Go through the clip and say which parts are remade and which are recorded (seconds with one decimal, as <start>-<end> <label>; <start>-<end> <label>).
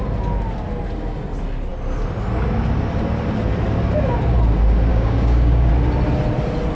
0.0-4.9 recorded; 4.9-5.7 remade; 5.7-6.7 recorded